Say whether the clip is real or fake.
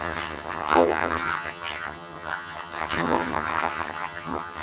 fake